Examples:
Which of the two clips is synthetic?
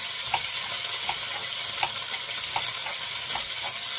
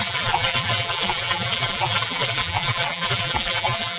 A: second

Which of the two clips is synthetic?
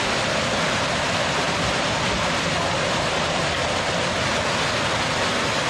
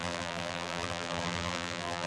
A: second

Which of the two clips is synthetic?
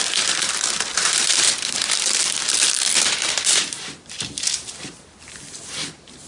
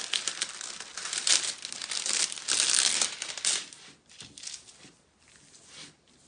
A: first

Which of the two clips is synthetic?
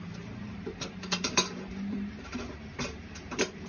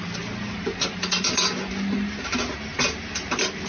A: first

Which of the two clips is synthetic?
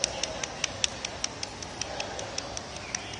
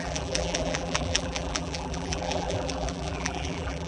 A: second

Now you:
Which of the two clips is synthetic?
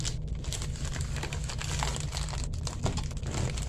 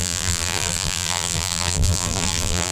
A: second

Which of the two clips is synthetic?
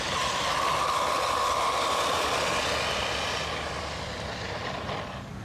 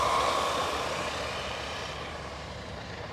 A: second